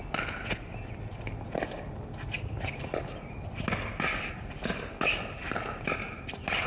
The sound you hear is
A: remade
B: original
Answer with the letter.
B